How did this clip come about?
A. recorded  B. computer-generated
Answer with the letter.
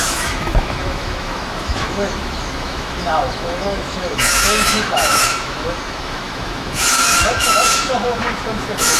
B